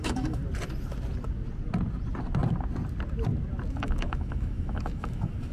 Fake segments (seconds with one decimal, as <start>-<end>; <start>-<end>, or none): 0.0-0.4; 3.7-5.5